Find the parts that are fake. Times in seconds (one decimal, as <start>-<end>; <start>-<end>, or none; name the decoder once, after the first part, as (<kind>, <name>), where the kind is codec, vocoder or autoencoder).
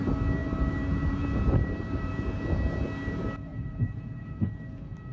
0.4-2.1 (vocoder, BigVGAN v2); 3.5-4.4